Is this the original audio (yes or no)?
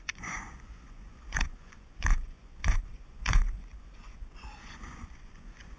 no